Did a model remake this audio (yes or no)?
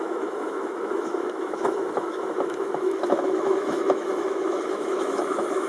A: yes